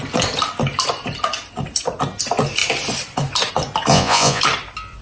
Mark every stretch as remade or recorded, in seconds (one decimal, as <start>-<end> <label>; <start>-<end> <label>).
0.0-3.9 recorded; 3.9-4.4 remade; 4.4-5.0 recorded